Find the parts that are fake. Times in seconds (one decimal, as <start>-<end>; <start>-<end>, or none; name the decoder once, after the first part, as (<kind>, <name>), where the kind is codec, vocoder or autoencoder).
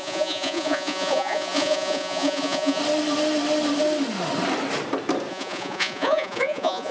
0.0-2.8 (vocoder, Vocos); 5.3-6.9